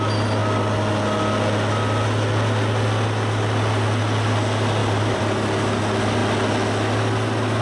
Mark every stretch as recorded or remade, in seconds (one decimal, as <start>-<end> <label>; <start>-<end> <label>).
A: 0.0-4.8 recorded; 4.8-5.8 remade; 5.8-7.6 recorded